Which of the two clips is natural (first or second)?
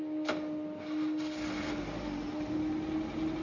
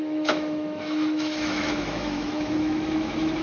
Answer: first